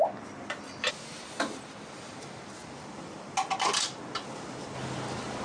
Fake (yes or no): no